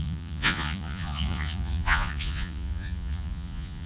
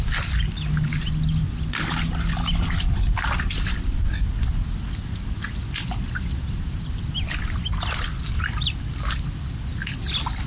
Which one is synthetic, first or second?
first